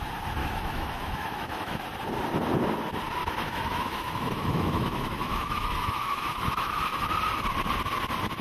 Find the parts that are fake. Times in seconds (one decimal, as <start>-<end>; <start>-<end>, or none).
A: 0.4-1.8; 3.2-6.8